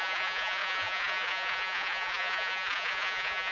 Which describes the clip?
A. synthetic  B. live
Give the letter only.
A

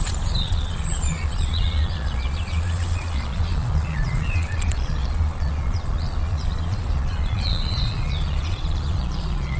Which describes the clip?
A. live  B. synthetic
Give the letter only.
B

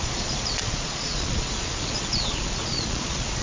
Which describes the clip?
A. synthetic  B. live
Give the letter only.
A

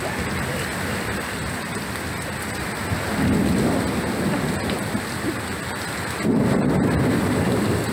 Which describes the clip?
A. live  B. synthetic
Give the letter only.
A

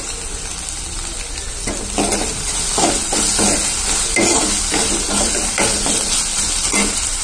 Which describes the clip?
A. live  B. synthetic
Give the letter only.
A